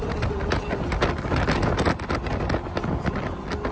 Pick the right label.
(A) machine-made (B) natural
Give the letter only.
B